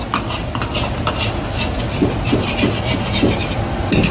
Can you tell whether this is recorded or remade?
recorded